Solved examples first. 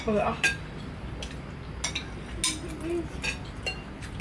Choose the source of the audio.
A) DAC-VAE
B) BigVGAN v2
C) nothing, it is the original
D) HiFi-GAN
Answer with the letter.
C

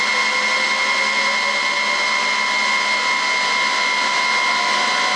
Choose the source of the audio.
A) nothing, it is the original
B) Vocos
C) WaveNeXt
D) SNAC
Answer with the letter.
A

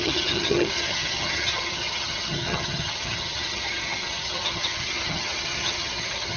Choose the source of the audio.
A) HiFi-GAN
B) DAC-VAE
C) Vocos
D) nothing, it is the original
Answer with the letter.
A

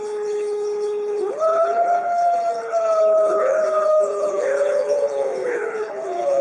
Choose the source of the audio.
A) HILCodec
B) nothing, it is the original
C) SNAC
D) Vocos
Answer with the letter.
A